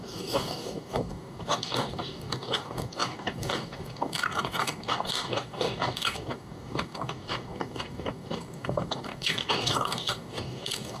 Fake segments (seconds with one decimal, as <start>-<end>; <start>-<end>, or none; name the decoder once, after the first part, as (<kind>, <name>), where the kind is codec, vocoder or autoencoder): 0.0-11.0 (codec, DAC)